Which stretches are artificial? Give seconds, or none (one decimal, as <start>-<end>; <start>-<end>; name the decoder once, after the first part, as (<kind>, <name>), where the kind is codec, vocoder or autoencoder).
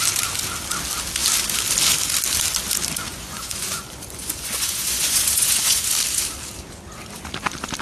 3.1-5.9 (vocoder, Vocos)